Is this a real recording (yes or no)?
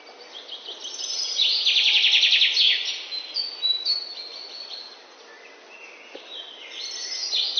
yes